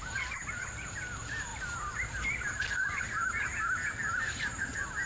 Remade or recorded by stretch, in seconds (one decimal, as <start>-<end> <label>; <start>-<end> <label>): 0.0-5.1 recorded